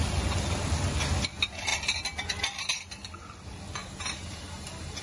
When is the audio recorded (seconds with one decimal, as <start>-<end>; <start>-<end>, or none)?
0.0-3.8